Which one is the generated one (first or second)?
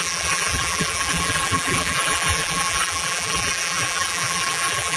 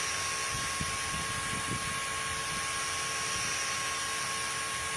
first